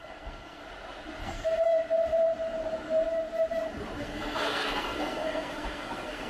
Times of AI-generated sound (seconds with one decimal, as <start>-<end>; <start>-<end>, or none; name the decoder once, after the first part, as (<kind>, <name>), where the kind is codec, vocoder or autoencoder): 0.0-0.6 (codec, SNAC); 1.2-1.7; 4.0-6.3